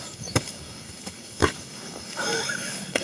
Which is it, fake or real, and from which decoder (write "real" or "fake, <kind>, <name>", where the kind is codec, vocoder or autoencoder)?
fake, codec, DAC